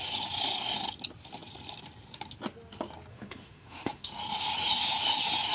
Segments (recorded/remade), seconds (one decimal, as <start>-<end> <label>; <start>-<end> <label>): 0.0-3.1 recorded; 3.1-4.2 remade; 4.2-5.5 recorded